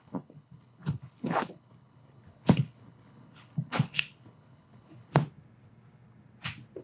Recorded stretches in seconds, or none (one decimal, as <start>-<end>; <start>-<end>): 5.1-6.8